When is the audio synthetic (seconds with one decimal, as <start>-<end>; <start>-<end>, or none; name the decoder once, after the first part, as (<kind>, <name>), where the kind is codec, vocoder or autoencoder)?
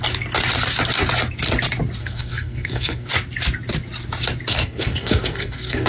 2.0-3.1 (codec, SNAC); 4.5-5.9